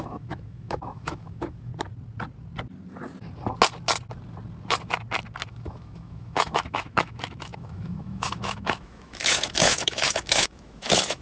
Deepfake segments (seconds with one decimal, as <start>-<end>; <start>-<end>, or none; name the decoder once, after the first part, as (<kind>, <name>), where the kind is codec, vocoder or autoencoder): 0.0-1.7 (autoencoder, DAC-VAE); 5.5-11.2